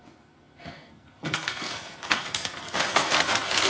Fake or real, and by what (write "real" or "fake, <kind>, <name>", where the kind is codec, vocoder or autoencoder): fake, codec, SNAC